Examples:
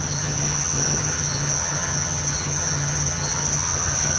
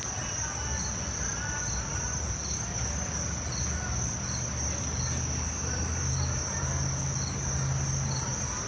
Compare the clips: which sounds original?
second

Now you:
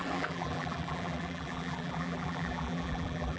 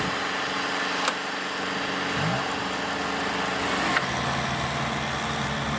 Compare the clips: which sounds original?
second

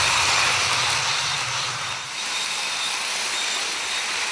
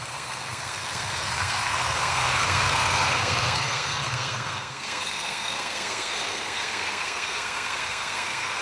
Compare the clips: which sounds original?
first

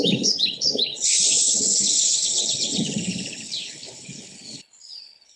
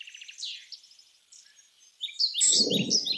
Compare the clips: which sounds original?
second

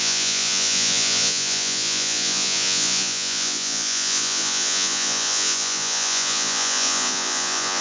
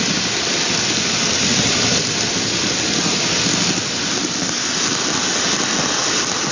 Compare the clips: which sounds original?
second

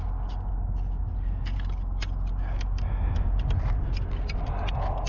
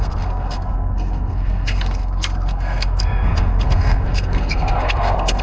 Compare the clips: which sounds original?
first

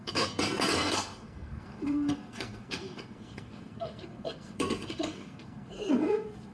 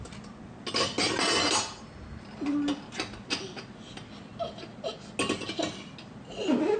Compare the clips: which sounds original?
second